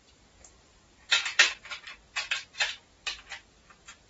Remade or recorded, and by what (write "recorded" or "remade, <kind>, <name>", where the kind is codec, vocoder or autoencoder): recorded